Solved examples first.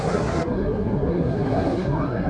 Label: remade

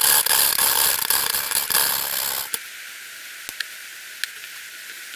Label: recorded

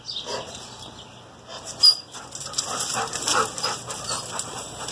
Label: recorded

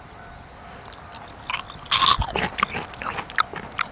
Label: recorded